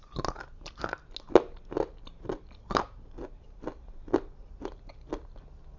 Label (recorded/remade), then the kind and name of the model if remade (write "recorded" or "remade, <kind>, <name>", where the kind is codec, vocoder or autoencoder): recorded